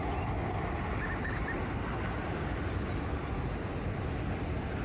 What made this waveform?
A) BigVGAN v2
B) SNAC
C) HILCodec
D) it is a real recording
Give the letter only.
D